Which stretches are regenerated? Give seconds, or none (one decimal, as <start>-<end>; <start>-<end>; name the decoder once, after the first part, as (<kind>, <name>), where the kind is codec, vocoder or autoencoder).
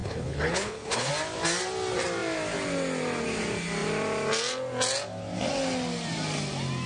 0.0-1.1 (codec, HILCodec)